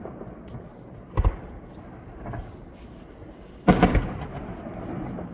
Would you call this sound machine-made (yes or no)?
yes